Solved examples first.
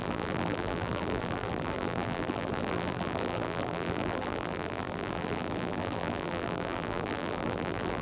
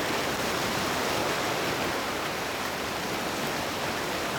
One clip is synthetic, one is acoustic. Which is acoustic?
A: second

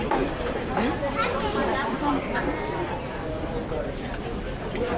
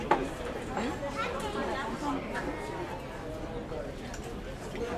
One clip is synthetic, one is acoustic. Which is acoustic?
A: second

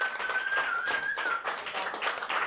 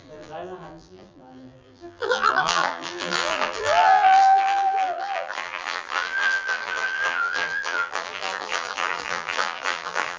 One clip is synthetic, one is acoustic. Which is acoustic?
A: first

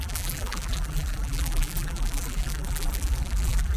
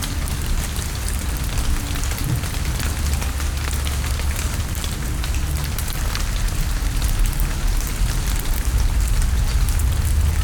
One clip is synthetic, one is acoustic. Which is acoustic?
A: second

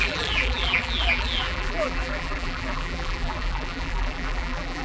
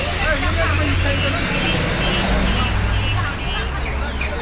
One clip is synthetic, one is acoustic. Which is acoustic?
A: second